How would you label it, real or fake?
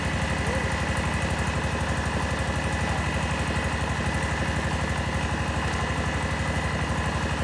real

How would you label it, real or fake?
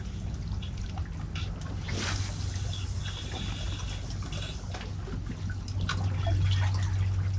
real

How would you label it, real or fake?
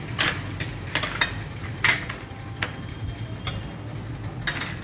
real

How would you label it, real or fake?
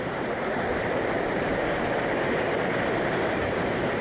fake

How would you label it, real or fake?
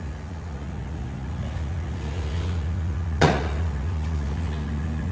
fake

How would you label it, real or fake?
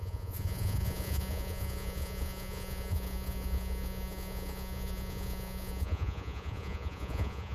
fake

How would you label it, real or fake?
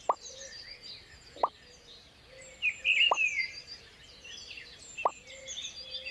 real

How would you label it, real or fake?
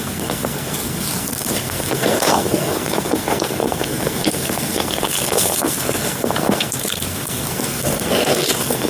fake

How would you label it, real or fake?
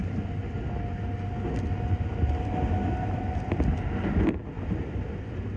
real